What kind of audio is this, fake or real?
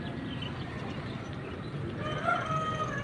real